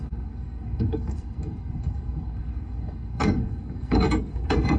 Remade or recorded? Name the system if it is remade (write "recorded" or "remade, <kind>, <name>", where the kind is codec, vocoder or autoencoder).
remade, codec, SNAC